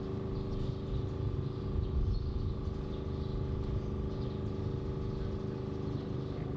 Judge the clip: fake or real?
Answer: real